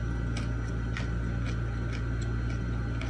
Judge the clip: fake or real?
real